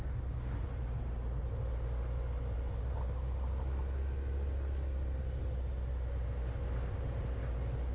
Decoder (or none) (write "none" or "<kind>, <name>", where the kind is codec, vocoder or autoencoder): none